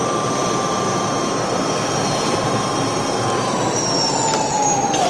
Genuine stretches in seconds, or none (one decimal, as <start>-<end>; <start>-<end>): 0.0-3.1